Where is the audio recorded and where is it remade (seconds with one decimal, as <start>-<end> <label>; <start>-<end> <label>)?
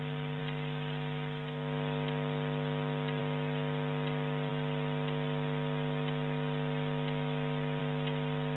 0.0-8.6 recorded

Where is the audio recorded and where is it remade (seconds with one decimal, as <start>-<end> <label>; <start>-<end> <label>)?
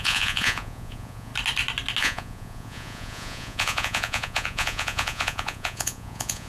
0.0-1.3 remade; 1.3-2.0 recorded; 2.0-6.5 remade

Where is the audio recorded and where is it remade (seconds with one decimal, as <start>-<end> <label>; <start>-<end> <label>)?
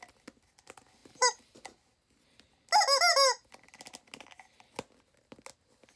0.0-6.0 recorded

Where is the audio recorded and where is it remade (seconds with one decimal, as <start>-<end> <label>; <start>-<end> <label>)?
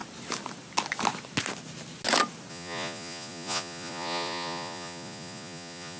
0.0-2.5 recorded; 2.5-6.0 remade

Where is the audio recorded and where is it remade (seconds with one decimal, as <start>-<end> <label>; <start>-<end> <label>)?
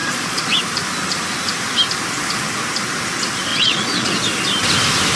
0.0-0.5 remade; 0.5-3.5 recorded; 3.5-4.1 remade; 4.1-5.2 recorded